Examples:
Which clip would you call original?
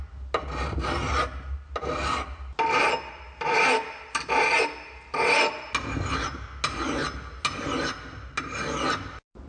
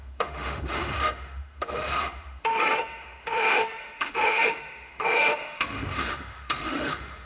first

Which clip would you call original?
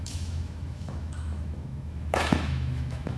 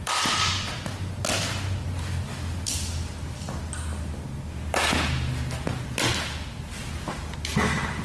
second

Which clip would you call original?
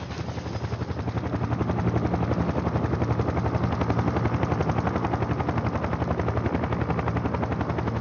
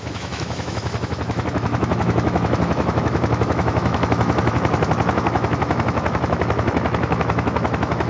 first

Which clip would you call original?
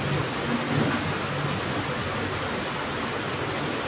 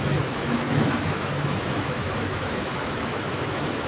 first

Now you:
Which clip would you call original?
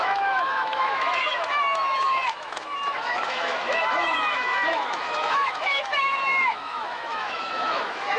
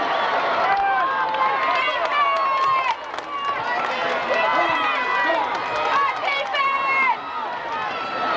second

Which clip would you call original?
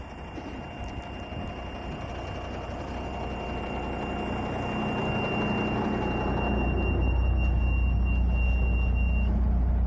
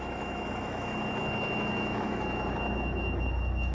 first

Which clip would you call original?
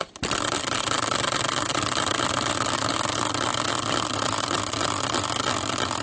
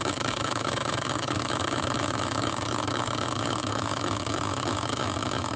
first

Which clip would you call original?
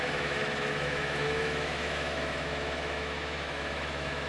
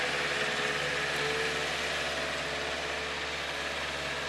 second